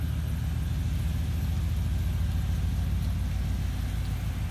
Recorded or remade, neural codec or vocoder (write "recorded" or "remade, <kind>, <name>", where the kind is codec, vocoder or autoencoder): recorded